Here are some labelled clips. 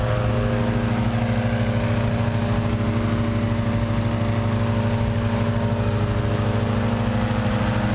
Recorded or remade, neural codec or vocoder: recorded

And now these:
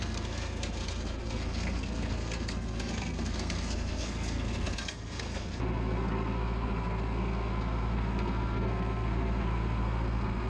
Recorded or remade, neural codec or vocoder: remade, codec, SNAC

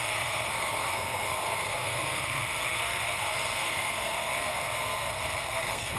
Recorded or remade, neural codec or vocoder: remade, codec, SNAC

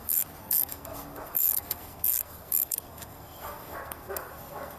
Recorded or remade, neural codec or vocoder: remade, codec, SNAC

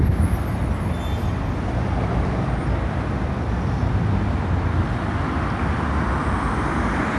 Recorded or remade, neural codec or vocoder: recorded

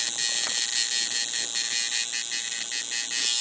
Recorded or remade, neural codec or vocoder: recorded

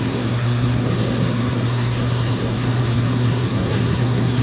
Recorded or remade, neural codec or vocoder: remade, codec, SNAC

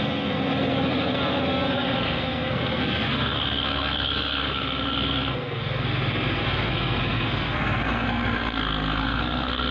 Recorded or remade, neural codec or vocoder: remade, codec, SNAC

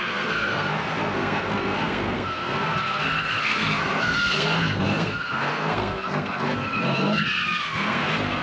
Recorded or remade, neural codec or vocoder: remade, codec, SNAC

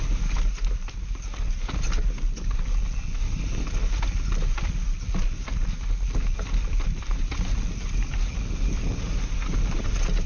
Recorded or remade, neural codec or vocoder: recorded